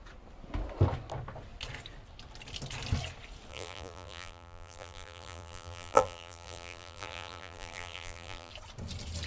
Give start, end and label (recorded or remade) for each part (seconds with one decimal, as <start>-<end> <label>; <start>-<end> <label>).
0.0-3.5 recorded; 3.5-8.5 remade; 8.5-9.3 recorded